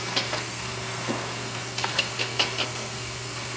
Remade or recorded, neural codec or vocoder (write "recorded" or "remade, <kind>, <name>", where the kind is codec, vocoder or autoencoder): remade, codec, SNAC